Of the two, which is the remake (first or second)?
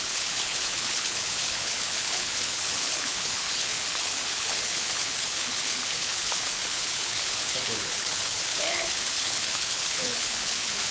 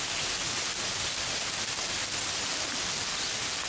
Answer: first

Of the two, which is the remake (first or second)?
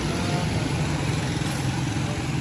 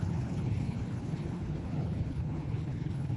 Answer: second